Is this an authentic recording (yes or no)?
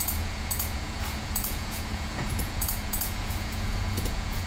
no